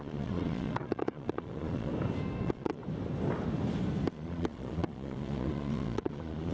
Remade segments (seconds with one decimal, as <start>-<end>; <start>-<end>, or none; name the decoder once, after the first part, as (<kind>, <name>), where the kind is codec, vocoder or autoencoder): 0.0-1.9 (vocoder, Vocos); 2.4-2.8; 4.1-6.5